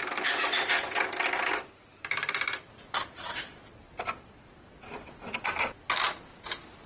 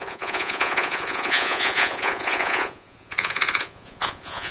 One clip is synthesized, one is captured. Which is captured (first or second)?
first